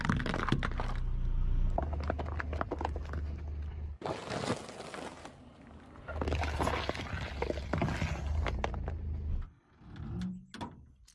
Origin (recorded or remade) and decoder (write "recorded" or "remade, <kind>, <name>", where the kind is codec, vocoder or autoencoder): recorded